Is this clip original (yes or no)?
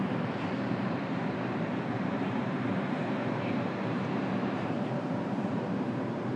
no